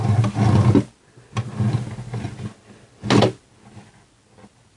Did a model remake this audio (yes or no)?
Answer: no